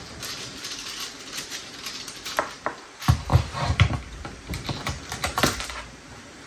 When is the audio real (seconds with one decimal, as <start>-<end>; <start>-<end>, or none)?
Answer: none